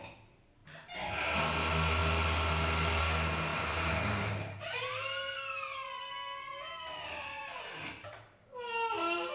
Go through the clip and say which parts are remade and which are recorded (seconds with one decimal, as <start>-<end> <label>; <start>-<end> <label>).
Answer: 0.0-0.6 recorded; 0.6-1.1 remade; 1.1-3.5 recorded; 3.5-6.0 remade; 6.0-9.3 recorded